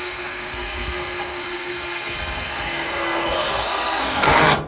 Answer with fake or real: fake